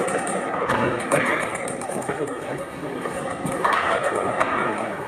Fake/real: fake